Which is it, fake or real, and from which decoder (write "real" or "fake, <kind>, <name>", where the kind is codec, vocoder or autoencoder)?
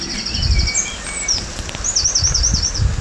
real